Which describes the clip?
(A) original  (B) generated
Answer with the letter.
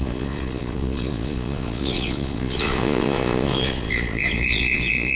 B